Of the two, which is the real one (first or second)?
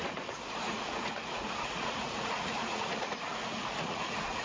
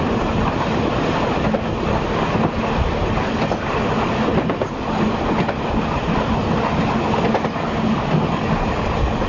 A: second